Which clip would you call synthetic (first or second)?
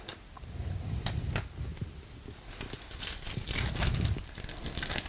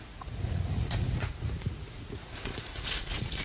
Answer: second